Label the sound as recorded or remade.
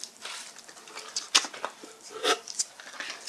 recorded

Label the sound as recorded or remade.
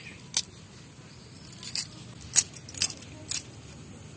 recorded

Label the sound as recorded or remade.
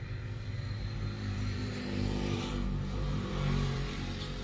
remade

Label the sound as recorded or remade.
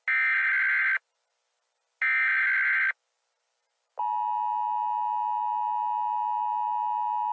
recorded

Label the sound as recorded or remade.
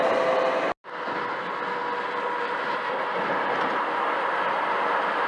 recorded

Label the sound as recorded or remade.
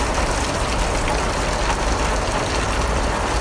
recorded